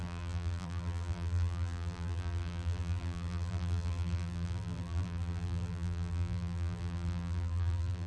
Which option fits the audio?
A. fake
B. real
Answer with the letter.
A